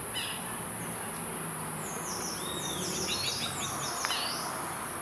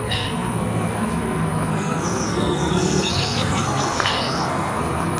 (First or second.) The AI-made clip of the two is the second